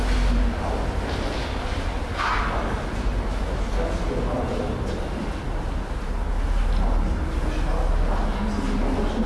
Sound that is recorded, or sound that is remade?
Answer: recorded